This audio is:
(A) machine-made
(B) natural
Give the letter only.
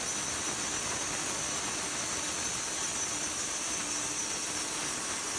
B